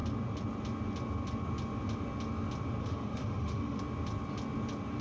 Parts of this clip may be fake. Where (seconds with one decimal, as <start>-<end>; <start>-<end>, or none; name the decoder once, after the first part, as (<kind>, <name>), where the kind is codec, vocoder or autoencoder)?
2.8-3.8 (autoencoder, DAC-VAE)